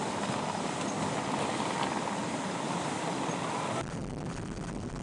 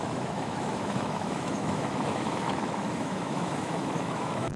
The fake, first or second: second